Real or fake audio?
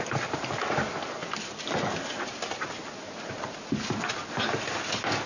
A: real